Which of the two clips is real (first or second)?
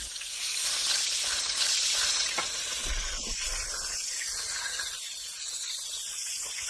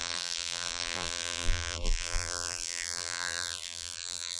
first